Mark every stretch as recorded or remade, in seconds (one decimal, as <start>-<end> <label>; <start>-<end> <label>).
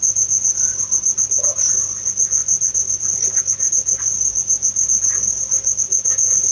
0.0-6.5 recorded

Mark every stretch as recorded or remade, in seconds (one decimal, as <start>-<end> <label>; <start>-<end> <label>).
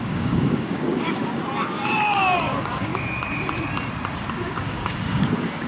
0.0-1.4 remade; 1.4-2.2 recorded; 2.2-2.9 remade; 2.9-4.3 recorded; 4.3-5.7 remade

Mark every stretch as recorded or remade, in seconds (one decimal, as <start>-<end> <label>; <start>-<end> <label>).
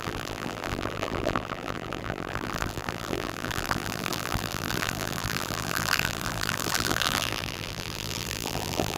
0.0-9.0 remade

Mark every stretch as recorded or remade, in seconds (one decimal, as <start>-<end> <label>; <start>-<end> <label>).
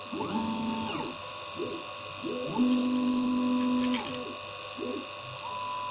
0.0-1.2 recorded; 1.2-1.7 remade; 1.7-5.9 recorded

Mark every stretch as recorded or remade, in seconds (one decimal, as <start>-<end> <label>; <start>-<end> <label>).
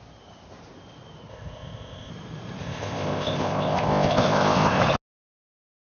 0.0-1.3 recorded; 1.3-2.1 remade; 2.1-2.6 recorded; 2.6-4.8 remade; 4.8-5.9 recorded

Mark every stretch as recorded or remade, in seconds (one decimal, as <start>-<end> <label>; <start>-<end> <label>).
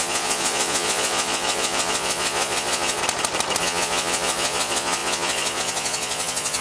0.0-3.0 remade; 3.0-3.6 recorded; 3.6-6.6 remade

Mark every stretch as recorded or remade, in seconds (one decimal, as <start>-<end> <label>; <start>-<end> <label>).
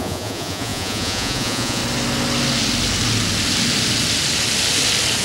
0.0-1.8 remade; 1.8-5.2 recorded